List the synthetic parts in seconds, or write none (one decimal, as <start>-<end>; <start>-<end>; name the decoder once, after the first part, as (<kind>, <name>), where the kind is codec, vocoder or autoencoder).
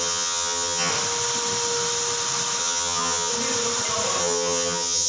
0.0-0.9 (vocoder, HiFi-GAN); 2.6-3.3; 4.2-5.1